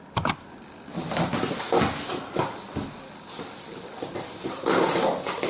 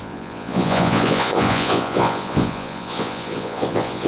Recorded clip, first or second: first